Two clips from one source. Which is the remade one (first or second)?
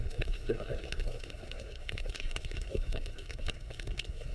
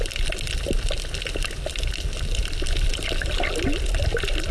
first